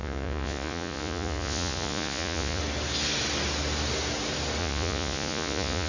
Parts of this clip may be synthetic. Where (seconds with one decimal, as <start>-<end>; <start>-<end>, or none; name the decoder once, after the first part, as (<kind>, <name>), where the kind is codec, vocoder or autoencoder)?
0.0-2.6 (vocoder, Vocos); 4.6-5.9